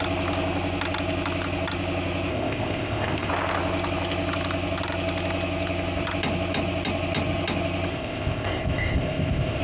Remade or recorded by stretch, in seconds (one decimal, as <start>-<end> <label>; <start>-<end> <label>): 0.0-2.3 recorded; 2.3-3.3 remade; 3.3-7.9 recorded; 7.9-9.6 remade